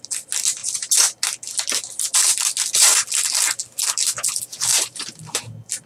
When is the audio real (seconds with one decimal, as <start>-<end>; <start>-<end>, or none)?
0.0-4.7; 5.2-5.9